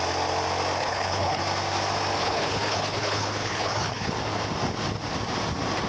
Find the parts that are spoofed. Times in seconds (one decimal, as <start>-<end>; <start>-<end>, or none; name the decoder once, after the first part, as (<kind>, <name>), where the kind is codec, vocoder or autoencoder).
0.8-1.4 (codec, HILCodec); 2.2-4.1